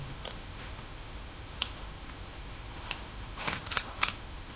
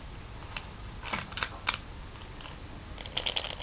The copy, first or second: first